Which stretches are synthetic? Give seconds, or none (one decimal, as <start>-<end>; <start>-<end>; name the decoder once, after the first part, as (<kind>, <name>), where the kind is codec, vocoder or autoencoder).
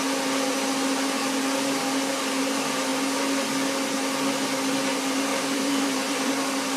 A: 5.3-6.3 (vocoder, BigVGAN v2)